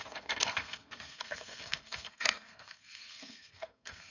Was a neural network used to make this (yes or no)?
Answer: yes